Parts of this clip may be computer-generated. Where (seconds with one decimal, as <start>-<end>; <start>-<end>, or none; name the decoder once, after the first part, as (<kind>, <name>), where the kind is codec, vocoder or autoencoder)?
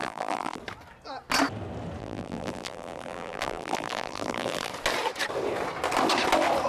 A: 0.0-0.6 (vocoder, BigVGAN v2); 2.0-4.7